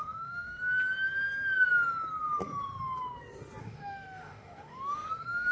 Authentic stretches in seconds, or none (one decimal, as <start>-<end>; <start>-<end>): 0.6-3.6